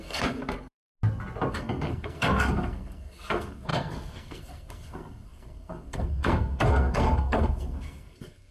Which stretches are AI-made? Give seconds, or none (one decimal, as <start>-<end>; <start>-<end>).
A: 0.0-0.9; 1.5-8.5